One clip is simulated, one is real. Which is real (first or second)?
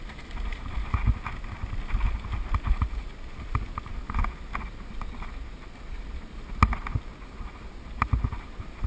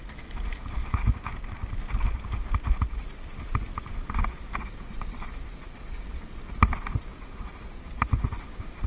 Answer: first